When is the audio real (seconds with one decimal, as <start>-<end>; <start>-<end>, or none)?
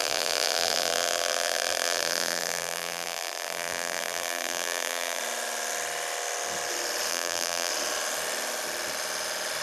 5.2-7.1; 7.7-9.6